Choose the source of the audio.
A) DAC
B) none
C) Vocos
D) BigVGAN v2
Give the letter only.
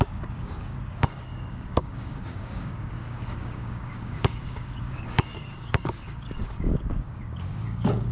A